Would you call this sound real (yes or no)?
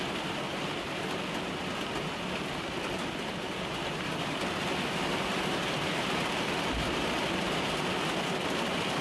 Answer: yes